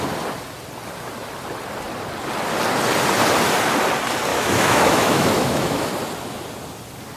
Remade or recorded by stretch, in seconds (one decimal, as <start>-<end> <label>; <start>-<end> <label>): 0.0-4.3 recorded; 4.3-5.9 remade; 5.9-7.2 recorded